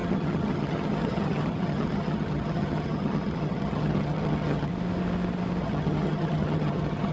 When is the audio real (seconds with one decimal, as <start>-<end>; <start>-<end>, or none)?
4.7-5.6